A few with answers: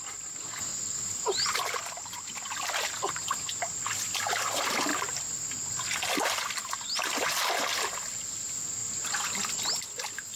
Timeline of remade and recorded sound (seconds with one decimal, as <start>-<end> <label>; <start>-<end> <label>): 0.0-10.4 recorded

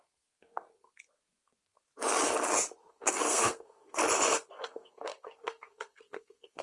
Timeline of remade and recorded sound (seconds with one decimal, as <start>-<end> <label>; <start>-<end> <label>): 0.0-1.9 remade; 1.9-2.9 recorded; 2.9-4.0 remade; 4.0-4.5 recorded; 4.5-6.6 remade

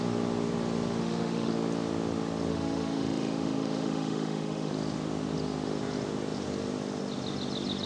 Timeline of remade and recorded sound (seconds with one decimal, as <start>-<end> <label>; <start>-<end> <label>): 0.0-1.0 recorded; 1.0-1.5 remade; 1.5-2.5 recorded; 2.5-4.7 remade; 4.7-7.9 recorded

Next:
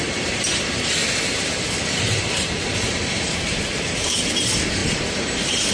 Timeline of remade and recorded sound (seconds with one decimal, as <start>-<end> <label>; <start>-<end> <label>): 0.0-1.0 remade; 1.0-3.0 recorded; 3.0-5.7 remade

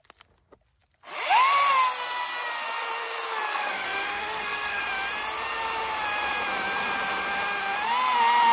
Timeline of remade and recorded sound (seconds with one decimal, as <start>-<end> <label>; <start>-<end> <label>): 0.0-3.5 recorded; 3.5-4.8 remade; 4.8-8.5 recorded